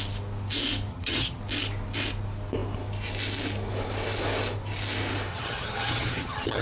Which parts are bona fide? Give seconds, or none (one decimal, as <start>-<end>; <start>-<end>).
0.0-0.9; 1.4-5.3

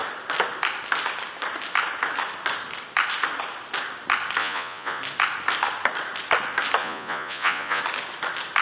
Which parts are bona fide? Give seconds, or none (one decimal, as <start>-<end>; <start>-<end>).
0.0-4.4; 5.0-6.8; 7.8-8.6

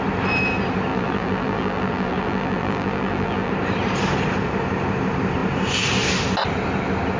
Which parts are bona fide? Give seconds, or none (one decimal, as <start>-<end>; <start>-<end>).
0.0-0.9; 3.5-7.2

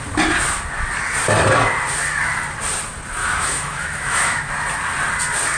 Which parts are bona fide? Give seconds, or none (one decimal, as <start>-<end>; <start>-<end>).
0.0-3.2; 4.5-5.6